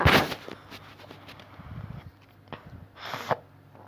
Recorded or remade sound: recorded